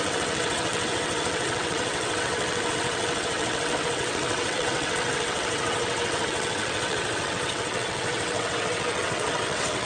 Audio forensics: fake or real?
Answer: fake